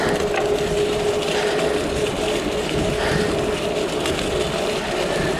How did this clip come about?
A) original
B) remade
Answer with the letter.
A